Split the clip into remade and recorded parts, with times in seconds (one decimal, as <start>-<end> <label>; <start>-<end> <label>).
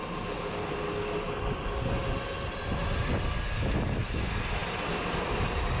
0.0-5.8 recorded